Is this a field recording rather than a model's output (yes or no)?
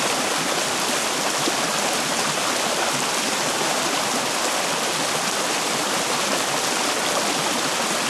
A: yes